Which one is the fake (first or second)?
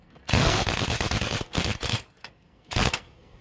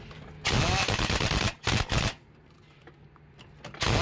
first